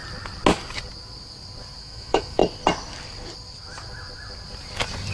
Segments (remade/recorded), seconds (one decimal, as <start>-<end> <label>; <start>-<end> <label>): 0.0-1.8 recorded; 1.8-2.4 remade; 2.4-5.1 recorded